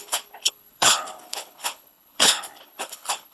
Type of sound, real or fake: fake